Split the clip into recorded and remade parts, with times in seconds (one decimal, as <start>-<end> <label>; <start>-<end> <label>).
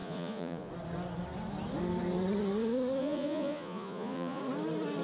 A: 0.0-0.7 remade; 0.7-3.0 recorded; 3.0-4.4 remade; 4.4-5.0 recorded